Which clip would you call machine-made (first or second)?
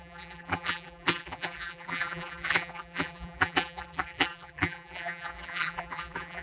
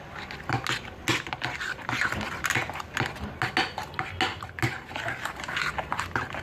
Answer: first